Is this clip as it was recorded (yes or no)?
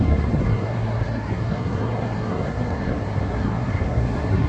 no